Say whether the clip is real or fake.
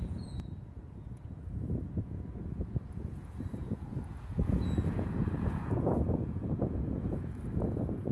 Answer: fake